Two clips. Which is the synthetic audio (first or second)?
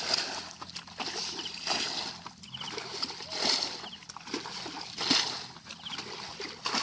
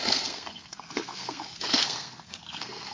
second